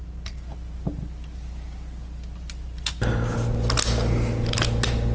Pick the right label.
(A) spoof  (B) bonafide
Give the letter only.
B